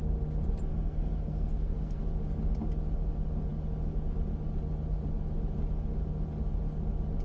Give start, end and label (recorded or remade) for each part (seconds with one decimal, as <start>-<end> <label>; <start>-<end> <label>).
0.0-0.7 recorded; 0.7-2.0 remade; 2.0-7.2 recorded